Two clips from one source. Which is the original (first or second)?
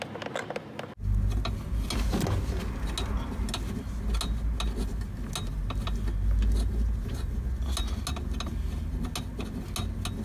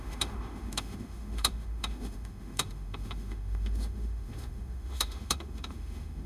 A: first